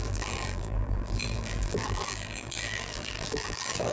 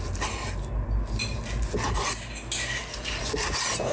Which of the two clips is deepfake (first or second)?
first